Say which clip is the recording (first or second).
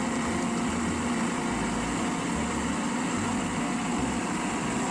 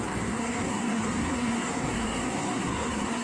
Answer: first